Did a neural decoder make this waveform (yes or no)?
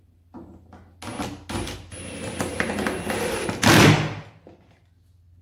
no